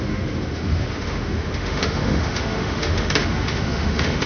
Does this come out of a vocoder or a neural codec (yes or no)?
yes